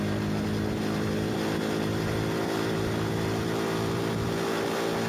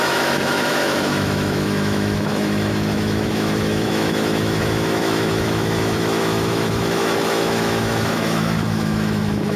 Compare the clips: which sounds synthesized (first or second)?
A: second